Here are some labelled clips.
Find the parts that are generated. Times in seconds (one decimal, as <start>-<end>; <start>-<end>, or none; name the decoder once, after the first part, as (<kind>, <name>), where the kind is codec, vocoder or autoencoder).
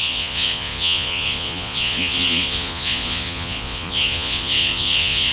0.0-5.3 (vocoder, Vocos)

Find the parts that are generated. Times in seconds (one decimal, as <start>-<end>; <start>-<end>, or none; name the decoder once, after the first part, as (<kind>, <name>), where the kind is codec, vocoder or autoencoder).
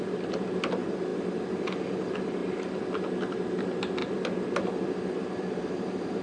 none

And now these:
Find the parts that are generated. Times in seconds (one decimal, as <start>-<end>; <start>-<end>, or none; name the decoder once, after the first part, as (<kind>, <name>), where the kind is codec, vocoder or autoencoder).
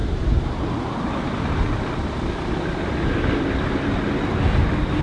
none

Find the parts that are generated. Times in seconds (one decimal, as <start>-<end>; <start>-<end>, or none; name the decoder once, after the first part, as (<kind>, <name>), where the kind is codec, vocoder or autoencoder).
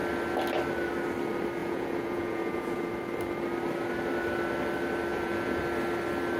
1.6-2.8 (vocoder, Vocos); 5.1-5.6